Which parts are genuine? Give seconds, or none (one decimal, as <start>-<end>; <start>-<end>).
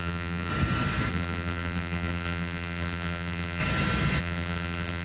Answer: 0.5-1.1; 3.6-4.2